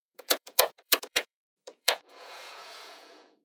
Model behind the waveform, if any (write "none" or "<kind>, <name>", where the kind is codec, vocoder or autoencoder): vocoder, Vocos